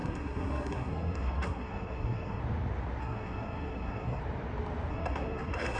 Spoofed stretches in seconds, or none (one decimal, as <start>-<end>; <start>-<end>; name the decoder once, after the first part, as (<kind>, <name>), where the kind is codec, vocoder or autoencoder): 0.0-2.4 (codec, SNAC); 3.0-4.2; 4.9-5.8